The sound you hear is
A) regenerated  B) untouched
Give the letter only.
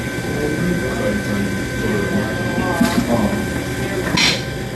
B